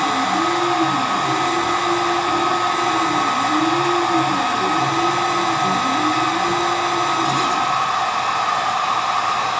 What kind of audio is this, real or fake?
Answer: real